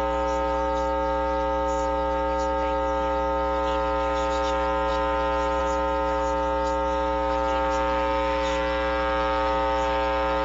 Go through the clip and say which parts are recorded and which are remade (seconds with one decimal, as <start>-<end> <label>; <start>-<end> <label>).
0.0-10.4 recorded